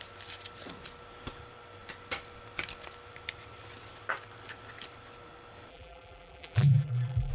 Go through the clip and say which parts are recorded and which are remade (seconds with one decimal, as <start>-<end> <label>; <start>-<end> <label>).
0.0-5.7 recorded; 5.7-7.3 remade